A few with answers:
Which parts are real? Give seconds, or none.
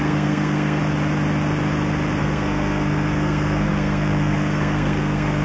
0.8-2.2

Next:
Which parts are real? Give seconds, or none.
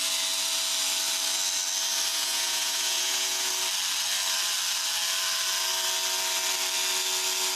0.0-2.1; 3.5-7.6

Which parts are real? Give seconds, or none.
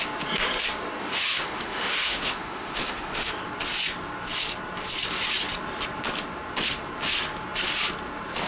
0.0-1.0; 3.3-8.5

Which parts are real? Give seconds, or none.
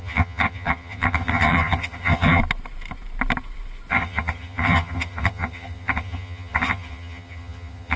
2.4-3.9